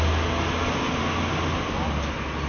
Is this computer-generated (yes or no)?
no